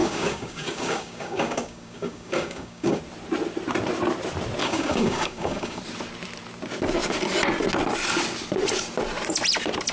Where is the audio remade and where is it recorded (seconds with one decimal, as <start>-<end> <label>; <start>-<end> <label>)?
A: 0.0-3.0 remade; 3.0-4.6 recorded; 4.6-5.8 remade; 5.8-9.9 recorded